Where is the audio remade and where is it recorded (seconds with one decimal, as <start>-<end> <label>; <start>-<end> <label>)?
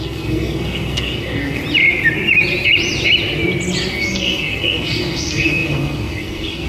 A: 0.0-1.6 remade; 1.6-3.9 recorded; 3.9-6.7 remade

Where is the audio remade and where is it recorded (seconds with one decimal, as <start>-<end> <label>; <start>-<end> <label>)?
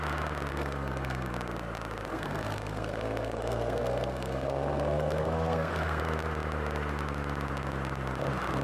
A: 0.0-0.5 recorded; 0.5-1.3 remade; 1.3-2.1 recorded; 2.1-6.0 remade; 6.0-8.6 recorded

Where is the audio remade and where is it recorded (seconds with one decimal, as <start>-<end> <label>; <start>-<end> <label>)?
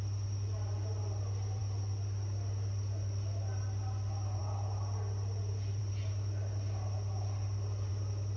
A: 0.0-8.4 recorded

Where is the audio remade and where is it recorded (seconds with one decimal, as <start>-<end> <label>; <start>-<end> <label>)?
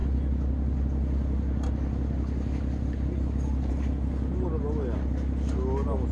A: 0.0-6.1 recorded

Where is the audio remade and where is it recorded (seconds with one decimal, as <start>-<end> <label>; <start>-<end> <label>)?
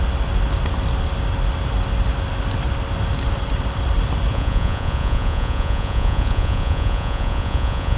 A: 0.0-4.3 recorded; 4.3-8.0 remade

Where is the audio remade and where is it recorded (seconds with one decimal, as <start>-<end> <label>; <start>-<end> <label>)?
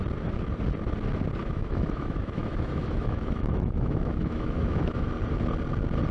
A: 0.0-1.4 recorded; 1.4-5.1 remade; 5.1-6.1 recorded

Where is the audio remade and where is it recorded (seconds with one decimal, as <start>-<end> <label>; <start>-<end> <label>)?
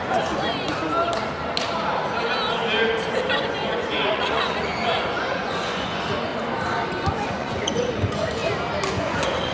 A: 0.0-0.8 remade; 0.8-3.3 recorded; 3.3-6.3 remade; 6.3-6.9 recorded; 6.9-8.4 remade; 8.4-8.9 recorded; 8.9-9.5 remade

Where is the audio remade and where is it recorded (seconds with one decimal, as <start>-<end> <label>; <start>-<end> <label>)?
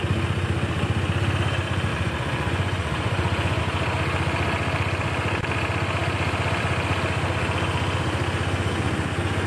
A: 0.0-1.9 recorded; 1.9-3.6 remade; 3.6-9.5 recorded